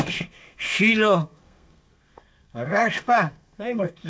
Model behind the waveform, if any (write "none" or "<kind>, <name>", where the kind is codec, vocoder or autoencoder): codec, SNAC